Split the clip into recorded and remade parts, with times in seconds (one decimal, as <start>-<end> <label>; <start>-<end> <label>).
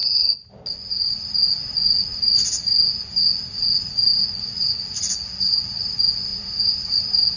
0.0-6.3 recorded; 6.3-7.0 remade; 7.0-7.4 recorded